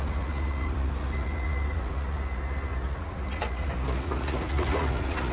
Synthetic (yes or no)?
yes